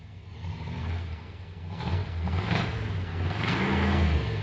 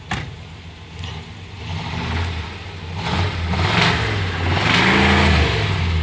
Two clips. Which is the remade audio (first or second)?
first